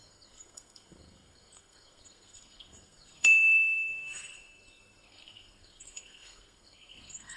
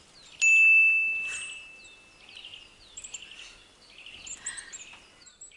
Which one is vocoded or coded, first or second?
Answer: first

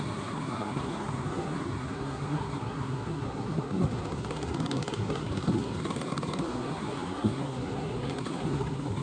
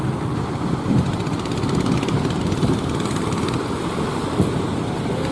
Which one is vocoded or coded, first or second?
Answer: first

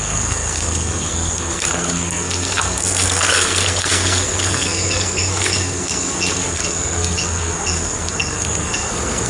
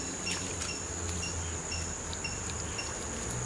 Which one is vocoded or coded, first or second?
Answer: first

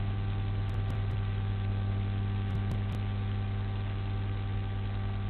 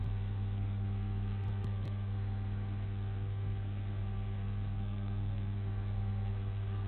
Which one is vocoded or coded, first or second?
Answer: second